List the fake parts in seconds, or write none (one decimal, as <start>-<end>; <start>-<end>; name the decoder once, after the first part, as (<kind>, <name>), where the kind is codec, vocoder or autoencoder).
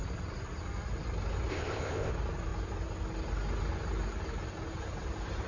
1.5-2.1 (codec, ZipCodec)